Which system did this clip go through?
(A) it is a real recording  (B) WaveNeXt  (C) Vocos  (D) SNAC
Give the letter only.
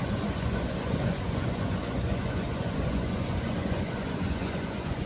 C